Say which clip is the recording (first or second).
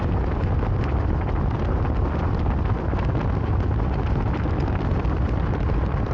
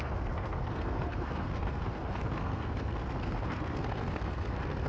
first